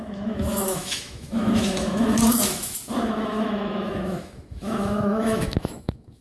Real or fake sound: fake